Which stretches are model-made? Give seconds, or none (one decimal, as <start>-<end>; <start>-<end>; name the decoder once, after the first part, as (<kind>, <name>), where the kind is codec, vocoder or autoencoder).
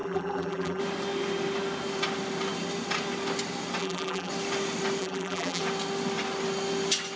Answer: 0.0-0.8 (vocoder, BigVGAN v2); 3.8-4.3; 5.0-5.6